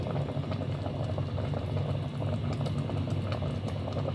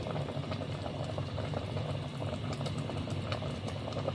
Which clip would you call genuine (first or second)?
first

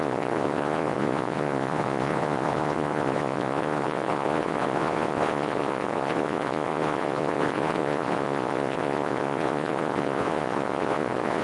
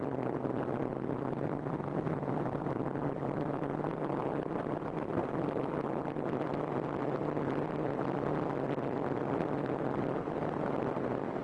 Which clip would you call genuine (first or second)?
second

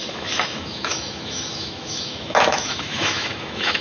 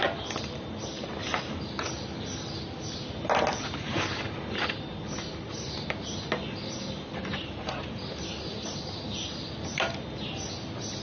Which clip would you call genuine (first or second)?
second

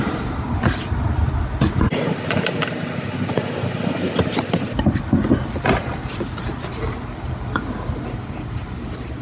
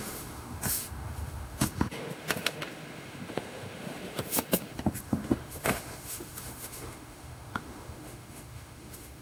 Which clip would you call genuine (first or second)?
first